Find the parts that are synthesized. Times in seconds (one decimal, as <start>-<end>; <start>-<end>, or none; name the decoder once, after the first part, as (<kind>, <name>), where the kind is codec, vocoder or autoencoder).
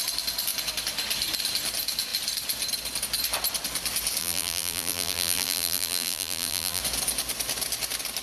4.2-6.8 (vocoder, BigVGAN v2)